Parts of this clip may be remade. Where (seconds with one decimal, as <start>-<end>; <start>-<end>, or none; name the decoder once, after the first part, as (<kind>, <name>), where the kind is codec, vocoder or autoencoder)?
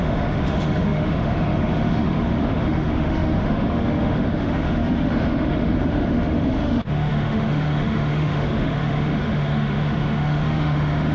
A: 0.0-11.1 (autoencoder, DAC-VAE)